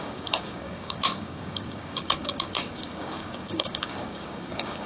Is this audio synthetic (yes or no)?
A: yes